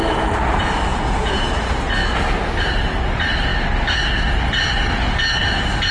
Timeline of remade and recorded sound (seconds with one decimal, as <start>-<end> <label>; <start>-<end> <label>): 0.0-0.9 recorded; 0.9-1.5 remade; 1.5-5.9 recorded

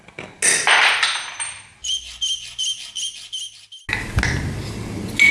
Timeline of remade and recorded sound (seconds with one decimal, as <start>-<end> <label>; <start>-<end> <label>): 0.0-5.3 recorded

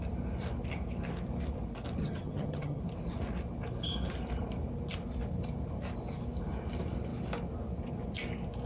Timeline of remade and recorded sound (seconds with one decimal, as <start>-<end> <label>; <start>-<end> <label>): 0.0-2.0 recorded; 2.0-2.8 remade; 2.8-8.7 recorded

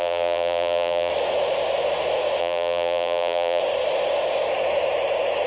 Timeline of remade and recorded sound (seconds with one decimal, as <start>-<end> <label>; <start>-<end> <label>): 0.0-1.1 remade; 1.1-2.4 recorded; 2.4-3.6 remade; 3.6-5.5 recorded

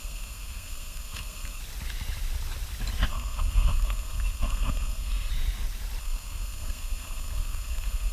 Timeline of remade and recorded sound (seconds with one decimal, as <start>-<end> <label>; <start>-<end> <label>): 0.0-1.6 remade; 1.6-3.1 recorded; 3.1-5.3 remade; 5.3-6.0 recorded; 6.0-8.1 remade